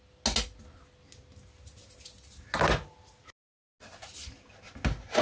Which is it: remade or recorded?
recorded